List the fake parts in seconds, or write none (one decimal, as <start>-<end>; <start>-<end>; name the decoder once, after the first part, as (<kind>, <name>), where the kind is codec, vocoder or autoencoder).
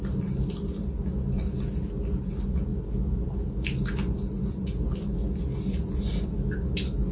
none